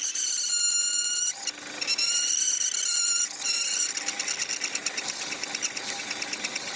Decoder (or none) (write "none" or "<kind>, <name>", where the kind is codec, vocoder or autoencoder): none